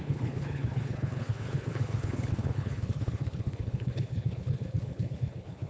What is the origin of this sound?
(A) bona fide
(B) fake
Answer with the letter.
B